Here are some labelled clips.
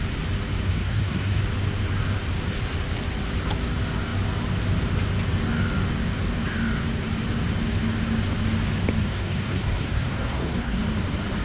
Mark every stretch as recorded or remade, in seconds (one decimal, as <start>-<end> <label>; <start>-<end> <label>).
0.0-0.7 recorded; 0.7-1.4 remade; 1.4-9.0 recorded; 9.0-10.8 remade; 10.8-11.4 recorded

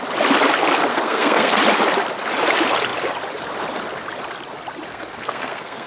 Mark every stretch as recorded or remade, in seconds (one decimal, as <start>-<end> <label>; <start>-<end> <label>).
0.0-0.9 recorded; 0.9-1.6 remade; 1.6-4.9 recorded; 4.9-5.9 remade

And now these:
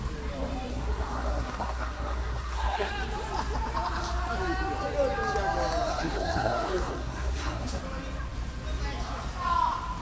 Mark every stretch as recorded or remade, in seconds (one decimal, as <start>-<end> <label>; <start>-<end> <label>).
0.0-0.7 recorded; 0.7-2.9 remade; 2.9-5.9 recorded; 5.9-7.8 remade; 7.8-10.0 recorded

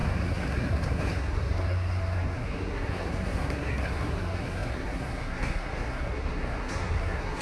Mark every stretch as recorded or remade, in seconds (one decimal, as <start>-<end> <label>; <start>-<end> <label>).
0.0-7.4 remade

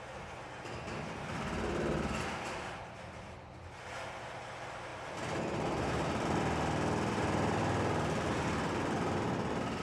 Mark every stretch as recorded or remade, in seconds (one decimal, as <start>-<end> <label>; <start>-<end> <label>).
0.0-9.8 recorded